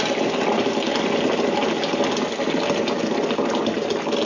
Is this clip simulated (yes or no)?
no